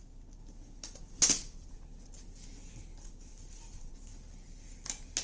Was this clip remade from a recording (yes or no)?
no